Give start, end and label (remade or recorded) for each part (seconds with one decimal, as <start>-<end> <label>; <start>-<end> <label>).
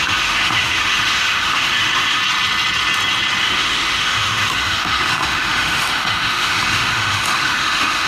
0.0-2.2 remade; 2.2-3.4 recorded; 3.4-8.1 remade